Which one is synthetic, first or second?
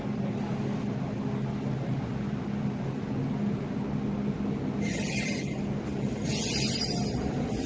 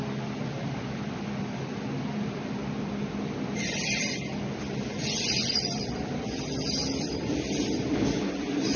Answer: second